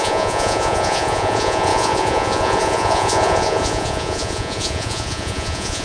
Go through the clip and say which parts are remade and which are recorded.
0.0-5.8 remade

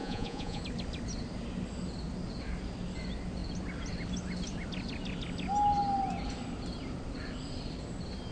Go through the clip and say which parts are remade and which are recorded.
0.0-0.6 remade; 0.6-8.3 recorded

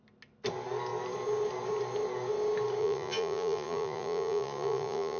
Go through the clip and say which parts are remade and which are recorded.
0.0-2.8 recorded; 2.8-5.2 remade

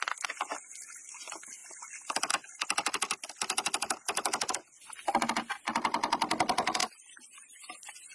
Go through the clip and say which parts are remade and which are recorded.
0.0-6.8 recorded; 6.8-8.1 remade

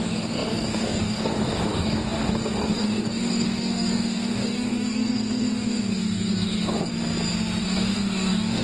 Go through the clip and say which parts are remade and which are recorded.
0.0-6.9 remade; 6.9-7.6 recorded; 7.6-8.6 remade

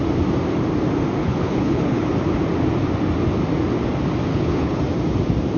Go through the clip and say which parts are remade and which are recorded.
0.0-1.2 recorded; 1.2-2.0 remade; 2.0-4.3 recorded; 4.3-4.8 remade; 4.8-5.6 recorded

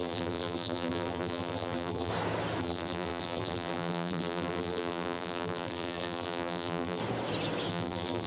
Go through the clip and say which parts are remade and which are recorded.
0.0-2.1 remade; 2.1-2.6 recorded; 2.6-7.0 remade; 7.0-7.7 recorded; 7.7-8.3 remade